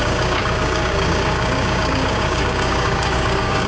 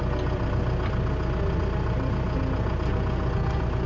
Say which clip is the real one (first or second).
second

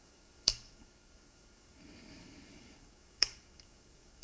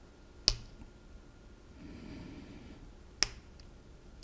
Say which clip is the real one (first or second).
second